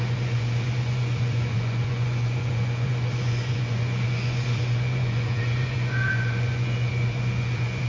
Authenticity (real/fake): fake